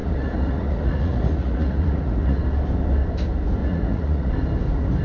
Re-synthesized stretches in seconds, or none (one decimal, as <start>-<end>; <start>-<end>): 0.0-2.4; 3.6-4.3